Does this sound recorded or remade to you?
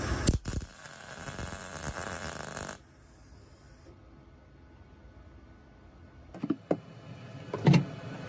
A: recorded